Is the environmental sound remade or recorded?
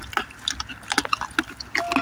recorded